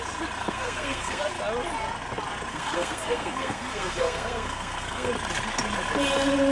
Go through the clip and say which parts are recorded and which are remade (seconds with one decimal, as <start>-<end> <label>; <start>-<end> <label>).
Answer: 0.0-0.4 recorded; 0.4-1.2 remade; 1.2-2.5 recorded; 2.5-5.1 remade; 5.1-6.5 recorded